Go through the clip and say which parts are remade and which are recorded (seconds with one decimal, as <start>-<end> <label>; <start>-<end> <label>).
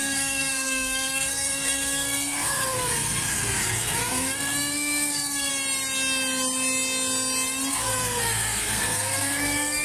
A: 0.0-5.5 remade; 5.5-7.7 recorded; 7.7-9.8 remade